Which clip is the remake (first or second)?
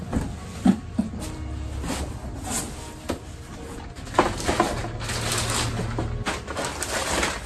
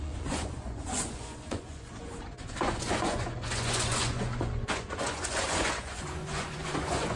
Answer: second